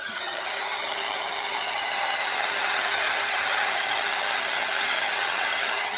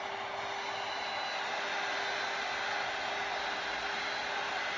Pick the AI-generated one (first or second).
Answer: first